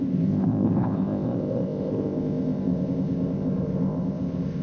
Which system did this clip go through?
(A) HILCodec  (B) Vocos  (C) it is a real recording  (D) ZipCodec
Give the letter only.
D